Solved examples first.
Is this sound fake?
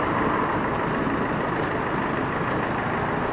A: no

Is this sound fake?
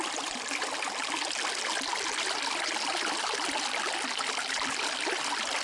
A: no